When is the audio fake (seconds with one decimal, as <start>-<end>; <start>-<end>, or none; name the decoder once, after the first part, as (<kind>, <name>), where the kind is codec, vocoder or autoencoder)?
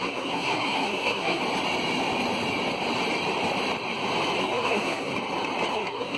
0.0-1.4 (codec, SNAC); 4.4-5.1; 5.7-6.2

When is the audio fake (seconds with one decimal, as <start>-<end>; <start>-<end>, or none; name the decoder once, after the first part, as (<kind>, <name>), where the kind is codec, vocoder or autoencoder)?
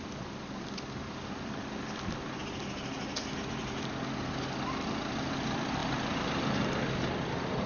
none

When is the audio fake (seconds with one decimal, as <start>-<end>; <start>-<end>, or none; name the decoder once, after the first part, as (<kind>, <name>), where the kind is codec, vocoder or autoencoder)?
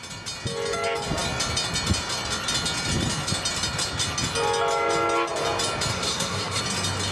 5.9-6.6 (codec, SNAC)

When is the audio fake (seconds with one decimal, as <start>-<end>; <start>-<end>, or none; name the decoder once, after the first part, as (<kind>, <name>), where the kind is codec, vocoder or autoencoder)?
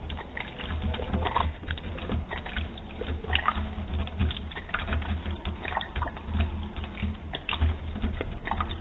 1.4-1.9 (codec, SNAC)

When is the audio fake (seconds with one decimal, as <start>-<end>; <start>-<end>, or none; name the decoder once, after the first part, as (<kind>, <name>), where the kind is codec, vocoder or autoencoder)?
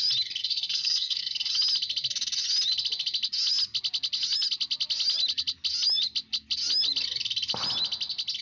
0.4-1.5 (codec, SNAC)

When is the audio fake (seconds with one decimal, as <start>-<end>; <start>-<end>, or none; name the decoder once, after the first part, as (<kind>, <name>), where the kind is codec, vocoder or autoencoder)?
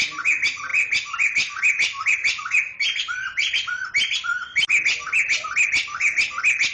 none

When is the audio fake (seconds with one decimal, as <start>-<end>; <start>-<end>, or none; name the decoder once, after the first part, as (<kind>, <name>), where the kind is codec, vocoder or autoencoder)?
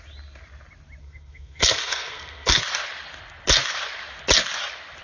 1.0-2.6 (codec, SNAC)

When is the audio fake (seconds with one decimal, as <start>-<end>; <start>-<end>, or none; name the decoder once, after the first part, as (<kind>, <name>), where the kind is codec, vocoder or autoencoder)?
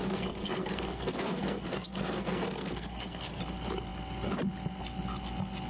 0.0-3.4 (codec, SNAC)